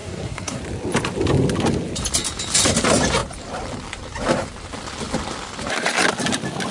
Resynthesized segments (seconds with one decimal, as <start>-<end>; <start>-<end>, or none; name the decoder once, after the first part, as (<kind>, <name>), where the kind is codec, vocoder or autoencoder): 0.0-0.6 (codec, SNAC)